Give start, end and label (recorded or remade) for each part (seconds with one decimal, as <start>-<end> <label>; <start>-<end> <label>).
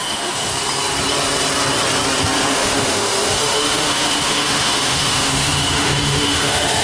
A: 0.0-0.5 remade; 0.5-2.5 recorded; 2.5-6.8 remade